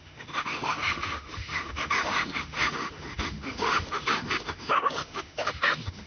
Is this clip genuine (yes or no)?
no